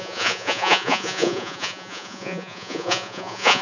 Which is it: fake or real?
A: fake